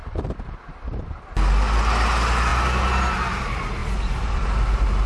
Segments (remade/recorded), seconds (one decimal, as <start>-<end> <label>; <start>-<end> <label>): 0.0-0.6 remade; 0.6-3.8 recorded; 3.8-5.1 remade